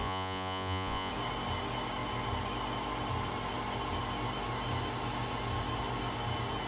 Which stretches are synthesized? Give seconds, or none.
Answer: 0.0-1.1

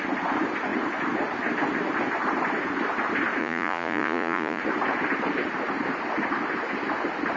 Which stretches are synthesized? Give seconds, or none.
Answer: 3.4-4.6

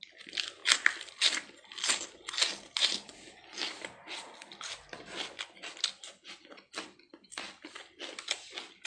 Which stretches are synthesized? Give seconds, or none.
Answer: none

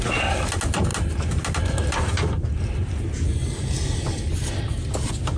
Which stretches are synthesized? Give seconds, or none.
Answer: none

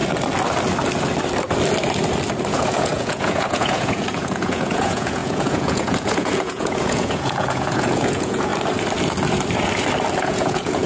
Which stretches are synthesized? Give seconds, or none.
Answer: 2.5-8.5; 10.2-10.9

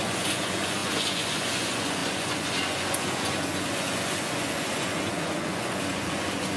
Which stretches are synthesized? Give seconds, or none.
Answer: 0.0-6.6